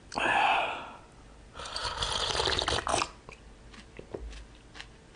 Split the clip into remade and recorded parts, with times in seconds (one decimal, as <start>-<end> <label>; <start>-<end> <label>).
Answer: 0.0-5.2 recorded